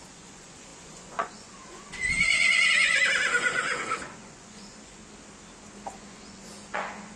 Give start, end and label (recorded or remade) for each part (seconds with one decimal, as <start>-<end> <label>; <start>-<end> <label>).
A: 0.0-5.0 remade; 5.0-6.0 recorded; 6.0-7.2 remade